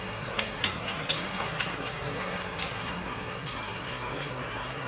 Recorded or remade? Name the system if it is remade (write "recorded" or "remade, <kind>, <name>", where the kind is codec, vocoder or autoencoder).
remade, codec, SNAC